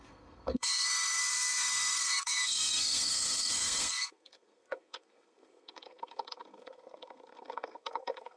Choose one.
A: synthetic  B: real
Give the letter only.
A